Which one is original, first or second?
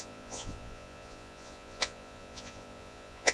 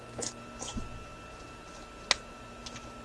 second